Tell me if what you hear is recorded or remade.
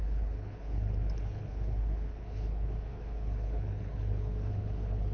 remade